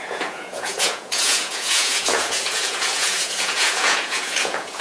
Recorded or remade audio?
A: remade